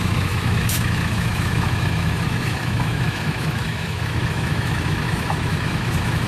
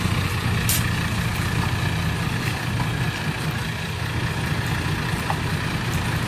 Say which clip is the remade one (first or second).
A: first